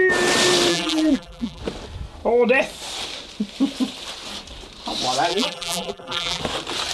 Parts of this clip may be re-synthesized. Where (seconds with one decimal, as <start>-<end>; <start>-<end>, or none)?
0.7-1.6; 5.3-6.4